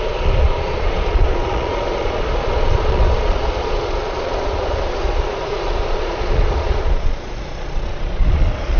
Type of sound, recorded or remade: remade